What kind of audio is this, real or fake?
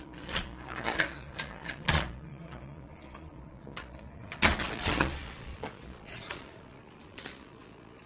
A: fake